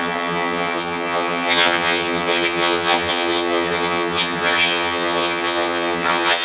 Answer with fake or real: fake